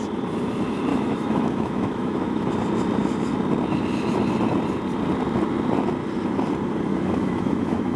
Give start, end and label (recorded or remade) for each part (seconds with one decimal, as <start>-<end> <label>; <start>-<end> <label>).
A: 0.0-0.9 recorded; 0.9-2.5 remade; 2.5-6.9 recorded; 6.9-8.0 remade